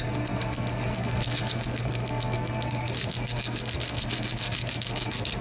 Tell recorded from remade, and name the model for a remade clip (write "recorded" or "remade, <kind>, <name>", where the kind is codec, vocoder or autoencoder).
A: remade, codec, SNAC